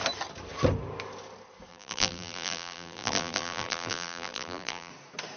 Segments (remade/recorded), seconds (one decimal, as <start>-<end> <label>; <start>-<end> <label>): 0.0-1.7 recorded; 1.7-4.9 remade; 4.9-5.4 recorded